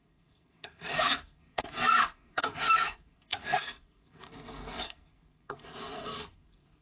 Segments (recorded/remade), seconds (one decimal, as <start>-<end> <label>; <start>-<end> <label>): 0.0-6.8 remade